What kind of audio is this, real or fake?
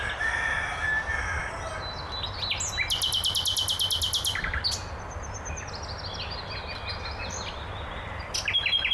real